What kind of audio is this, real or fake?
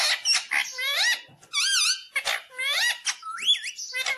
real